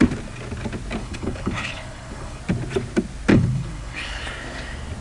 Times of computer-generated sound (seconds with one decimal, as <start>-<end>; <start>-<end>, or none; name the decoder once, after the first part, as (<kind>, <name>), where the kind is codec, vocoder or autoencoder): 1.0-2.4 (codec, HILCodec); 3.3-4.2